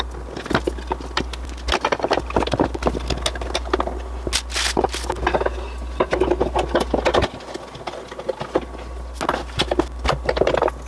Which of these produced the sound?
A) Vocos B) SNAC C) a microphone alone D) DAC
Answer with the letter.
C